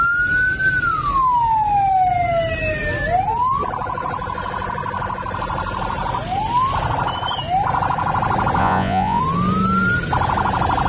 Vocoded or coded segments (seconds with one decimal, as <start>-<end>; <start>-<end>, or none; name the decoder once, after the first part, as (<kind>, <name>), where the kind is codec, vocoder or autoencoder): 8.6-9.2 (vocoder, Vocos)